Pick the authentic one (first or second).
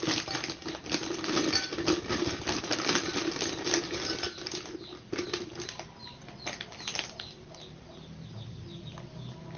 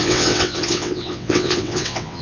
first